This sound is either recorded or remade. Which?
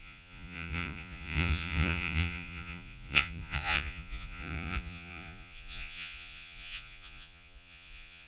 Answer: remade